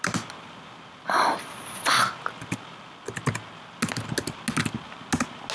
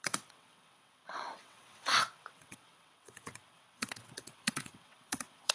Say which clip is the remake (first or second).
second